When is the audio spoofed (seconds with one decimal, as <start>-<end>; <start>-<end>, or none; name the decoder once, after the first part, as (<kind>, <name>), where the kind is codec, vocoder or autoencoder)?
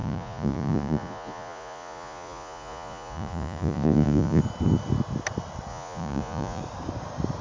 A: 0.0-4.4 (vocoder, Vocos); 5.7-6.6